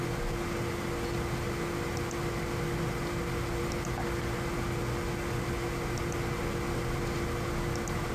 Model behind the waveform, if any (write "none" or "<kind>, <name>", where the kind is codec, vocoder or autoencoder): none